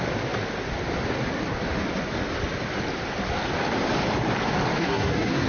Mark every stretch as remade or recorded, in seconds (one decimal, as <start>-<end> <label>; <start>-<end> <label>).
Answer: 0.0-4.8 recorded; 4.8-5.5 remade